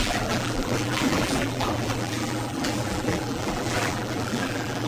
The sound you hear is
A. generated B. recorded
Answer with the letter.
A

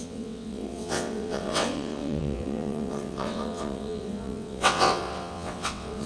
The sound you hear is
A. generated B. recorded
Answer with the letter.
A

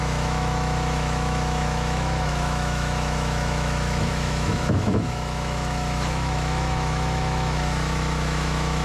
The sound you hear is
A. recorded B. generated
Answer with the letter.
B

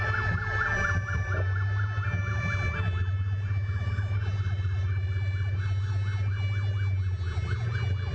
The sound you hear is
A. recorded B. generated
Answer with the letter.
A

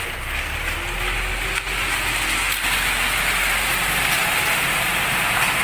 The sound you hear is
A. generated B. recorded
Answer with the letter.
B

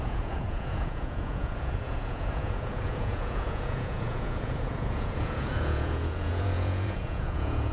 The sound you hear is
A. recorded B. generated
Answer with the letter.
B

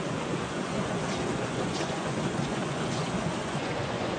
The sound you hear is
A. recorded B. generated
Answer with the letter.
B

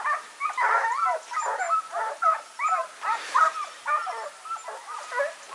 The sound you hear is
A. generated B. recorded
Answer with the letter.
B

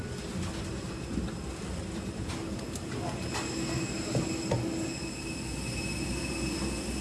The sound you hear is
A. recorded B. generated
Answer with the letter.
A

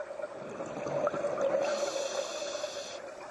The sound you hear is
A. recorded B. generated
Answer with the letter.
A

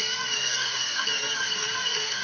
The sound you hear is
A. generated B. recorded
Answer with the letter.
A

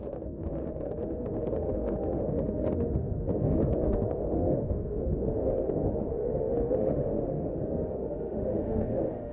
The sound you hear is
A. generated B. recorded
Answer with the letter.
A